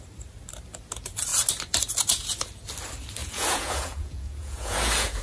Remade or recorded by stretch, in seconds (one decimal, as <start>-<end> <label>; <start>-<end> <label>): 0.0-3.2 recorded; 3.2-5.2 remade